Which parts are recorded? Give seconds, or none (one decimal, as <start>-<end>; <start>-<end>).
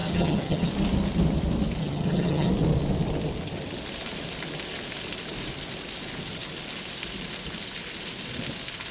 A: 0.7-1.8; 2.5-8.9